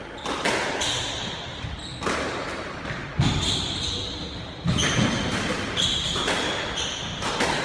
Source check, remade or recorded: recorded